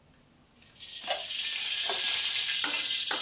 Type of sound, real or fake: real